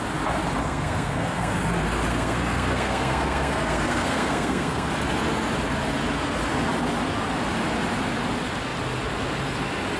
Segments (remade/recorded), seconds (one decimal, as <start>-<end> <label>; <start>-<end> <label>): 0.0-0.6 recorded; 0.6-1.7 remade; 1.7-2.1 recorded; 2.1-4.9 remade; 4.9-10.0 recorded